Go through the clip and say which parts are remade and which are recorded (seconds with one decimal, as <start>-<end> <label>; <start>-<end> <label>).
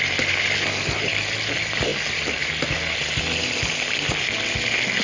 0.0-5.0 recorded